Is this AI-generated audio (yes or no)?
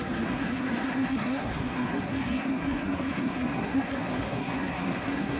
yes